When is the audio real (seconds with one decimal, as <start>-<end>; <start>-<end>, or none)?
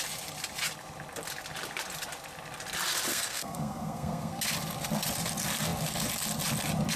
0.0-3.1; 4.4-7.0